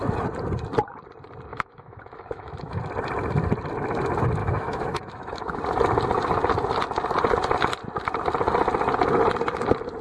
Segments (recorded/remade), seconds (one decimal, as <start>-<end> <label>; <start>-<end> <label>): 0.0-1.5 recorded; 1.5-2.8 remade; 2.8-4.4 recorded; 4.4-5.6 remade; 5.6-10.0 recorded

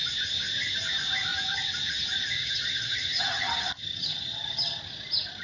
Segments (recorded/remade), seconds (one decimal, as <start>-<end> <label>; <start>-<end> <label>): 0.0-2.4 recorded; 2.4-4.8 remade; 4.8-5.4 recorded

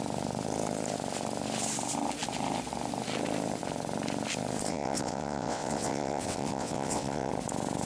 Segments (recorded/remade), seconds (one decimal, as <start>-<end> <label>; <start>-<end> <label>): 0.0-4.7 recorded; 4.7-7.3 remade; 7.3-7.9 recorded

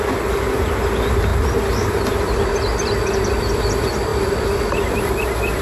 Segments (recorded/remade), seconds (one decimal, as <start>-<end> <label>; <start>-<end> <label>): 0.0-5.6 recorded